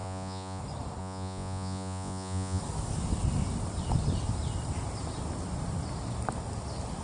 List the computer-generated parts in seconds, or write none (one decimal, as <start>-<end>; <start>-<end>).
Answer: 0.0-0.6; 1.0-2.6